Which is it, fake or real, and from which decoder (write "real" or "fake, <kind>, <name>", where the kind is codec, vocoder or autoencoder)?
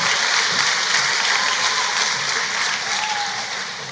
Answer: real